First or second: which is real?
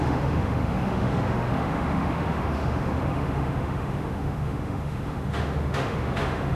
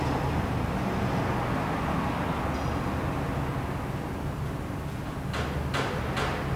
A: second